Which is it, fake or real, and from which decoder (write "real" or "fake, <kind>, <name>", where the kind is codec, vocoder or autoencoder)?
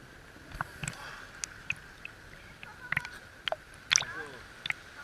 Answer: real